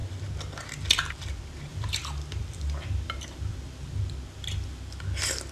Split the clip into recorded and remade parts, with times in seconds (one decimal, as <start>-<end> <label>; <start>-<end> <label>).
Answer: 0.0-1.7 recorded; 1.7-4.0 remade; 4.0-5.5 recorded